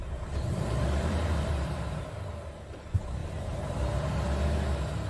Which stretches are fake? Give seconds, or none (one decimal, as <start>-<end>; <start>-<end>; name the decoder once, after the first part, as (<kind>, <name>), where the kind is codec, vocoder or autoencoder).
0.0-2.0 (vocoder, BigVGAN v2); 3.2-3.8